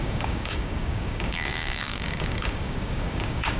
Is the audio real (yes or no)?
no